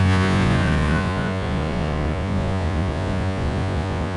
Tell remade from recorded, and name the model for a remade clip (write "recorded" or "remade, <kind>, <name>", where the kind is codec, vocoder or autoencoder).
remade, vocoder, Vocos